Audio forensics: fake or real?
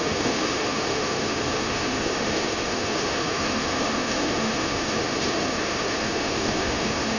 fake